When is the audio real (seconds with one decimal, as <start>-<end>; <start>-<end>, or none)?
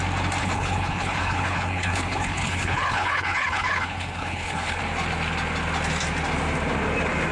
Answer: 0.0-0.4; 4.8-7.3